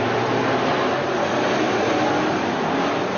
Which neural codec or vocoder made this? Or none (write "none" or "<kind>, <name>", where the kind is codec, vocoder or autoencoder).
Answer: none